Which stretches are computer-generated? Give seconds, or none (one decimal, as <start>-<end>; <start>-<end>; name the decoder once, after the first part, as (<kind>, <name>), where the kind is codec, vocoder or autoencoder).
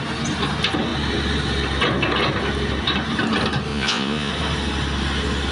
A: 3.7-4.3 (vocoder, Vocos)